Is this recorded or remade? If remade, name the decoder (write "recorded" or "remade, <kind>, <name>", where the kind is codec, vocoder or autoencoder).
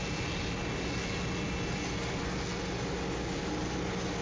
recorded